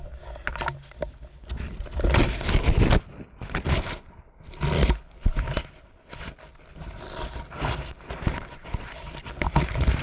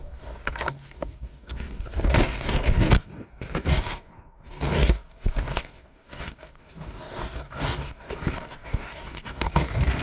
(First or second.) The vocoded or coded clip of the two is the second